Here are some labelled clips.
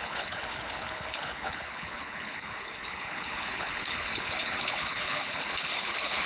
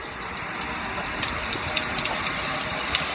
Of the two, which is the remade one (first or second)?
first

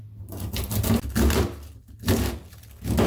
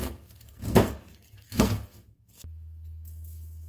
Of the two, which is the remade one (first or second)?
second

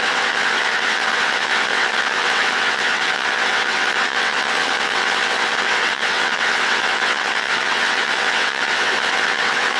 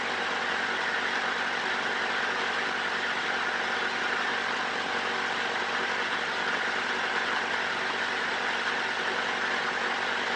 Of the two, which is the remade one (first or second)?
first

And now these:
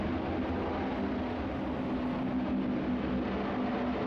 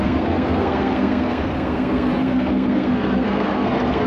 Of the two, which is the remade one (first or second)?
second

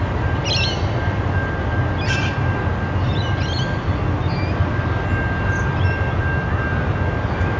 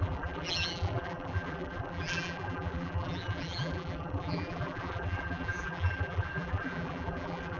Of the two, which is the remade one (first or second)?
second